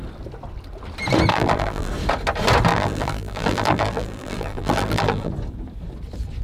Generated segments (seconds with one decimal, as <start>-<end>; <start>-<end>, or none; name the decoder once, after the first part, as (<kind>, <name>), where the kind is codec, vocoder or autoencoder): 1.3-1.9 (vocoder, BigVGAN v2); 2.7-5.3